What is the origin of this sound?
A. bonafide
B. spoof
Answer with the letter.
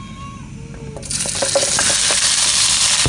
A